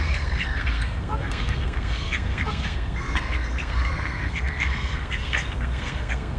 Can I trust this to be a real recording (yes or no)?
no